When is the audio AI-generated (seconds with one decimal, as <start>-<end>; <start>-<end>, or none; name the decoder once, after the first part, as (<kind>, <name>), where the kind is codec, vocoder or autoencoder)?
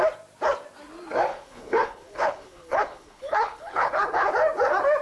1.3-4.3 (codec, HILCodec)